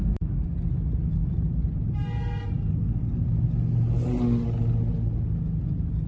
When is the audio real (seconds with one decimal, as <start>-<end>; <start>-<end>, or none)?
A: 0.0-6.1